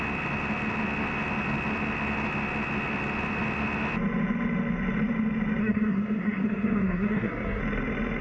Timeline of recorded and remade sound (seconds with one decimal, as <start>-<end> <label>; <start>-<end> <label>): 0.0-5.6 recorded; 5.6-7.6 remade; 7.6-8.2 recorded